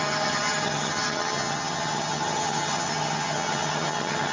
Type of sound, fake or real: fake